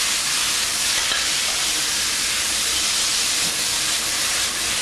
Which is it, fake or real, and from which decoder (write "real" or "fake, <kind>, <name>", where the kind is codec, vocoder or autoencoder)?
real